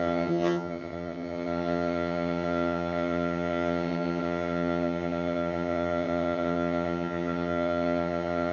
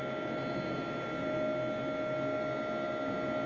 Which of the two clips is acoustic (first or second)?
second